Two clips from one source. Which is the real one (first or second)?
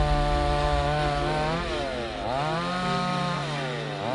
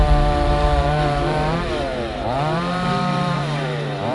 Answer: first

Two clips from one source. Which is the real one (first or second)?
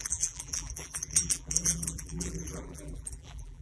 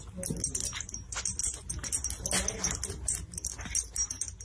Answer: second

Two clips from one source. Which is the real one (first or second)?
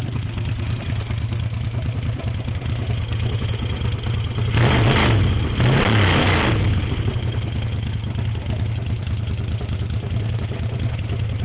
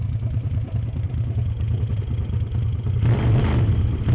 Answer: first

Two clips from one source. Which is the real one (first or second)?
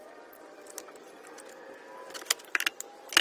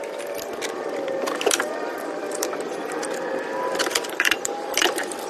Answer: first